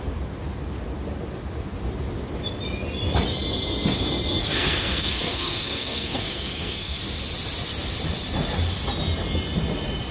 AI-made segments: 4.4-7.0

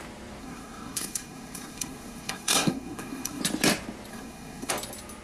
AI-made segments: 0.4-3.4; 4.1-4.7

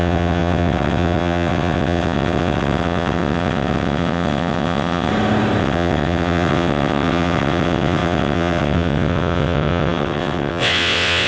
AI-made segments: 0.0-5.1; 5.6-11.3

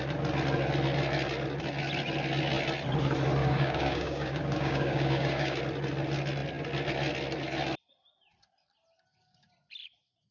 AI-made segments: 3.4-5.6

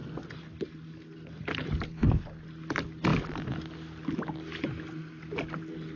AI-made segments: none

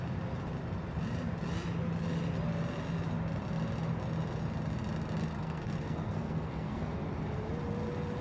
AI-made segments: 5.2-6.8

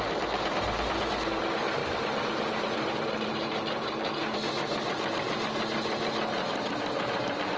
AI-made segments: 1.8-4.5; 6.4-7.6

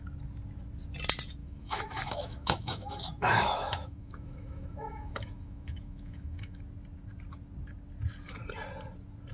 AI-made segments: 1.4-6.6